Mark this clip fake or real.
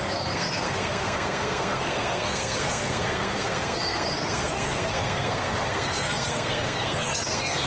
fake